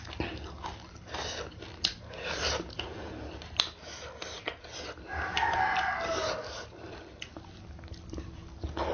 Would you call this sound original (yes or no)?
yes